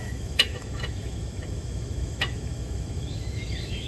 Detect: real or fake fake